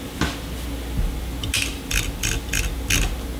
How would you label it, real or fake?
real